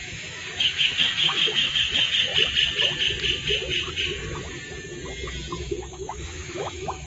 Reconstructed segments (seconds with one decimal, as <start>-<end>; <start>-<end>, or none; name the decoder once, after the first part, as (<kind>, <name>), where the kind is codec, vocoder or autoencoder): 0.0-2.3 (autoencoder, DAC-VAE); 5.6-7.1